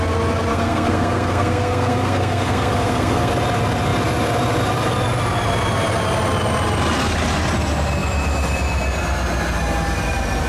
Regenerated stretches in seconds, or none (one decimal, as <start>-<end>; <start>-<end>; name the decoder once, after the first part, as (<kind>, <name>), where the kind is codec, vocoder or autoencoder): 0.5-3.3 (codec, SNAC)